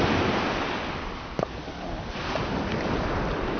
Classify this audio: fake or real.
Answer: real